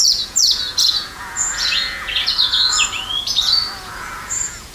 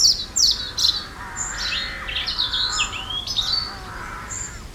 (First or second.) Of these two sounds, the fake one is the first